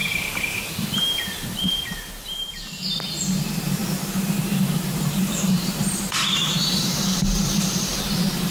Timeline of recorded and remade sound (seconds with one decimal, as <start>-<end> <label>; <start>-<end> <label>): 0.0-3.8 remade; 3.8-4.6 recorded; 4.6-8.5 remade